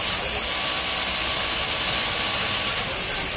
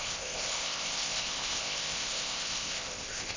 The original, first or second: first